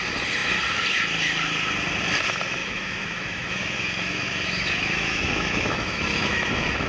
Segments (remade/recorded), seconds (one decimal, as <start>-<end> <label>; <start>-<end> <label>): 0.0-2.6 recorded; 2.6-6.9 remade